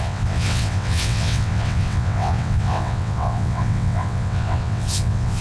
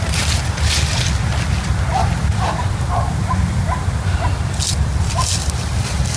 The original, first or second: second